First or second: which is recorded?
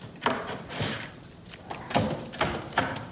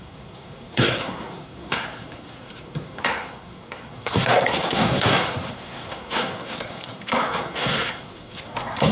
first